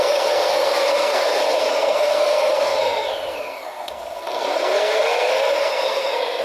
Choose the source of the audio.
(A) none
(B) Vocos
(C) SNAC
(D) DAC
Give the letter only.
C